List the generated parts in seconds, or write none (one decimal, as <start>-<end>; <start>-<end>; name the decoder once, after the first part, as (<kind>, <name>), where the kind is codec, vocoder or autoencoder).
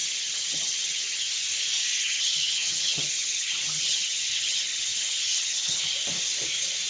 0.0-1.3 (vocoder, HiFi-GAN); 1.9-5.8